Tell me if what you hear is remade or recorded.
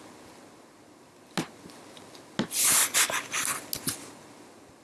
recorded